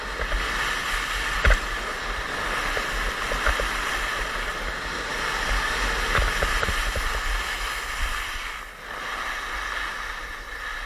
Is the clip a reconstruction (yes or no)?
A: no